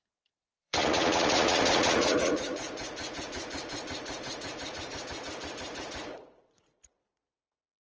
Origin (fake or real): fake